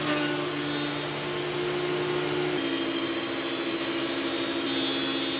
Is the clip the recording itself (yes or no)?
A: yes